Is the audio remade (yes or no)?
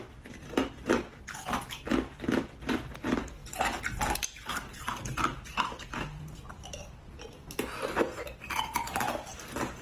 no